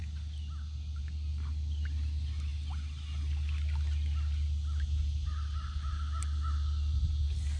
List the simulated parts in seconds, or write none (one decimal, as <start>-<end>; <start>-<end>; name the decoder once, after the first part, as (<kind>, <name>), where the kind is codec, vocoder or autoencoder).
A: none